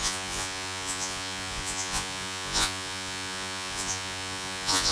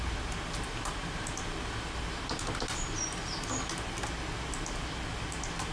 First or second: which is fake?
first